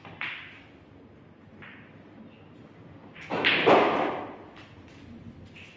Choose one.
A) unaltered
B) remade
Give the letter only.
A